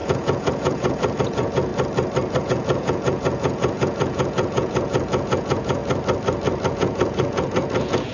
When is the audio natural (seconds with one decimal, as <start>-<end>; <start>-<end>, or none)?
1.7-2.4; 5.8-6.7